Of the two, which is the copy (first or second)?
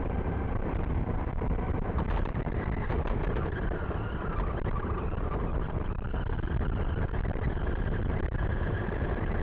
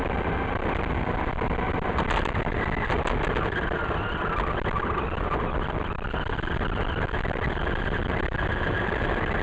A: first